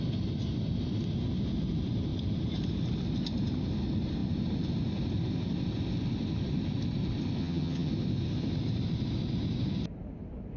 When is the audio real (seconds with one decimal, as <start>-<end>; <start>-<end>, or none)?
0.0-7.4; 7.9-10.6